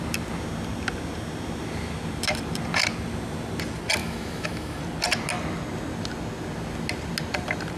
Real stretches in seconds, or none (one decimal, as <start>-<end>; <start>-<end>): 0.0-4.0; 4.8-7.8